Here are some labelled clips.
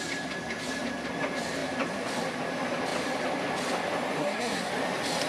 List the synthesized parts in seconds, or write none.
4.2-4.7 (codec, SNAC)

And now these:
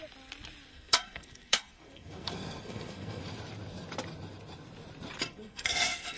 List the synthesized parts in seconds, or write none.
0.7-3.2 (codec, SNAC); 5.3-6.2